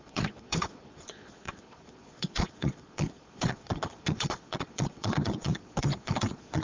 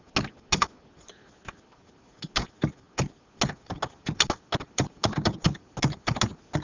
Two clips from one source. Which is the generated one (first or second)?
first